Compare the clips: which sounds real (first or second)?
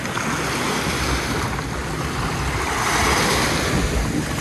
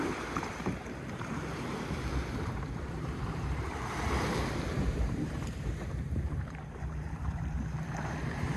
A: first